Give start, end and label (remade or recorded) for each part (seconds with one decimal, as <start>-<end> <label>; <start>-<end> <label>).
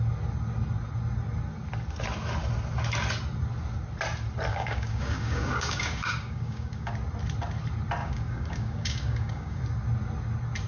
0.0-4.5 recorded; 4.5-6.9 remade; 6.9-8.0 recorded; 8.0-9.6 remade; 9.6-10.7 recorded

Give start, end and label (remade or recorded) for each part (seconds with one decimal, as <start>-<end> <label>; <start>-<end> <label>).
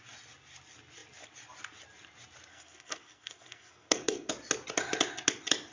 0.0-2.5 recorded; 2.5-4.3 remade; 4.3-5.7 recorded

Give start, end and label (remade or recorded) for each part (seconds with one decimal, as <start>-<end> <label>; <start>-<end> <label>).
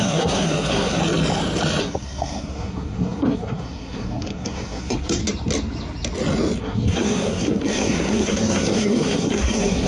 0.0-1.0 remade; 1.0-1.8 recorded; 1.8-5.2 remade; 5.2-6.6 recorded; 6.6-9.9 remade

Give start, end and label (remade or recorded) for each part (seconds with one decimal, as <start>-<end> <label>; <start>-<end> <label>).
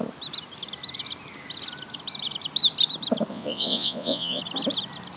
0.0-3.3 recorded; 3.3-4.4 remade; 4.4-5.2 recorded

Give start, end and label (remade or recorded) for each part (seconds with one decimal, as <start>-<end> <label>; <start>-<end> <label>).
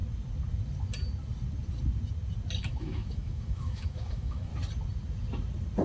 0.0-2.6 recorded; 2.6-4.5 remade; 4.5-5.8 recorded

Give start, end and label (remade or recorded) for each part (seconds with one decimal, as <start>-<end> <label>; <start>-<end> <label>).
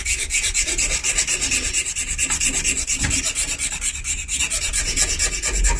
0.0-1.0 remade; 1.0-4.4 recorded; 4.4-5.8 remade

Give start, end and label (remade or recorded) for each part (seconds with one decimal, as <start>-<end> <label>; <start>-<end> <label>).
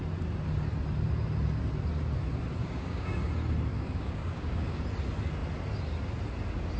0.0-2.6 recorded; 2.6-3.3 remade; 3.3-3.7 recorded; 3.7-4.8 remade; 4.8-6.8 recorded